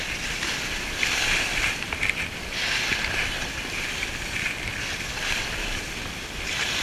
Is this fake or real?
fake